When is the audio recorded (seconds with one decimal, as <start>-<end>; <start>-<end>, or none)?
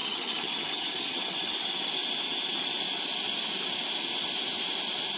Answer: 1.5-5.2